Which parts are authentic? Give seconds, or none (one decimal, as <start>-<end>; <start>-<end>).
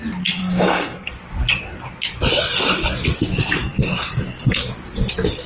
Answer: 0.0-0.4; 1.1-5.5